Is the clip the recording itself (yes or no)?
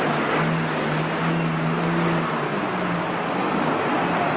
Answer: yes